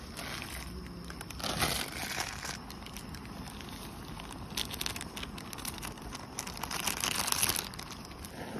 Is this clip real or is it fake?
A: real